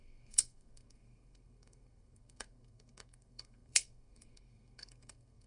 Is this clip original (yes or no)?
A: no